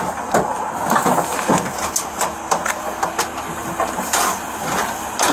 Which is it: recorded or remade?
recorded